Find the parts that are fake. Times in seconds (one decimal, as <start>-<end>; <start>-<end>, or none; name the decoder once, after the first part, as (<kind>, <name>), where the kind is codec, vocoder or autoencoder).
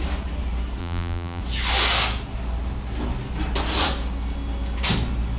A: 0.8-1.4 (vocoder, BigVGAN v2)